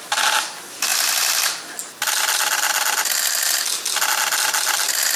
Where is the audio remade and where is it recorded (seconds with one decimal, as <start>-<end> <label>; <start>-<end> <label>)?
0.0-5.1 recorded